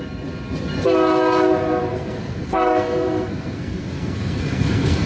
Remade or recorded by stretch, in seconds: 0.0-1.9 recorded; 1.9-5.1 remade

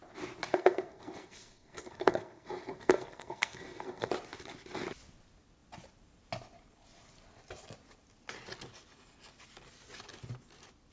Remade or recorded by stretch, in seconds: 0.0-0.5 recorded; 0.5-4.1 remade; 4.1-10.9 recorded